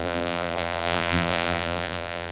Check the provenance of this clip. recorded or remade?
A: remade